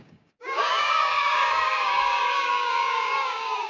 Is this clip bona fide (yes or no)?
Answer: no